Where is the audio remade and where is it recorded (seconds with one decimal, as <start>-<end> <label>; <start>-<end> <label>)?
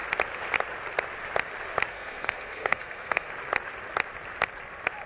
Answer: 0.0-1.9 recorded; 1.9-3.3 remade; 3.3-5.1 recorded